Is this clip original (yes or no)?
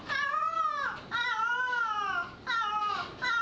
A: yes